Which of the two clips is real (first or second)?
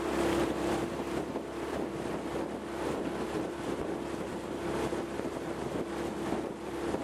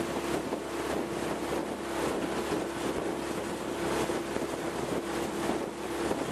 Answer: second